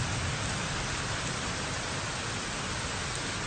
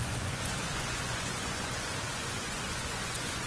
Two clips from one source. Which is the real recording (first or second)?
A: first